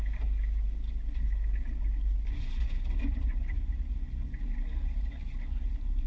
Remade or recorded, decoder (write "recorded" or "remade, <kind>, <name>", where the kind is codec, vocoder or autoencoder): recorded